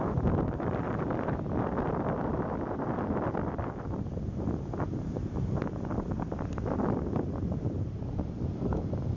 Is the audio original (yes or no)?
no